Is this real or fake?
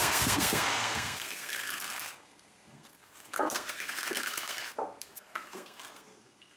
fake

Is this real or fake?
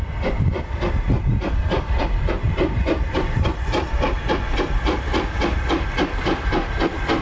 real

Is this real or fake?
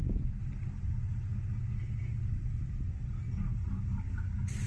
real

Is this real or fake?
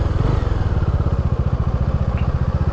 real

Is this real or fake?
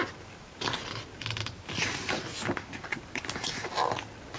real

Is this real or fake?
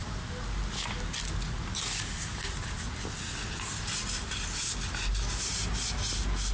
real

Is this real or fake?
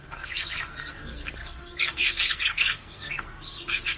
fake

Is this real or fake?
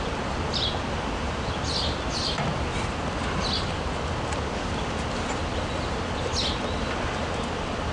real